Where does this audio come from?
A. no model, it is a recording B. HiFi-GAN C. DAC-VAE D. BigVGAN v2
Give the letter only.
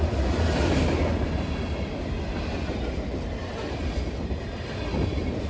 A